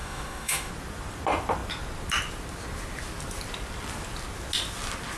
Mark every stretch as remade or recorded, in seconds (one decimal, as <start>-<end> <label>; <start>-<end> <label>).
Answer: 0.0-0.7 remade; 0.7-5.2 recorded